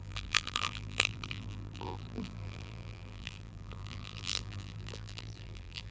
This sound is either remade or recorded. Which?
remade